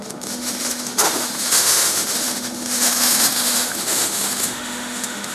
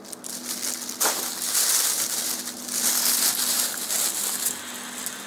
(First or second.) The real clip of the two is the second